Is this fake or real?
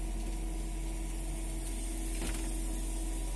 real